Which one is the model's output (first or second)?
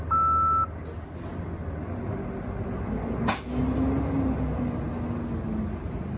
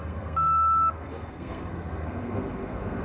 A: second